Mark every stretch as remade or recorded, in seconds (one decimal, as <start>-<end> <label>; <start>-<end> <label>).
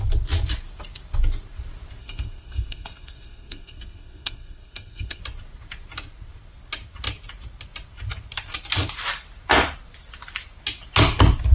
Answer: 0.0-2.0 recorded; 2.0-5.2 remade; 5.2-11.5 recorded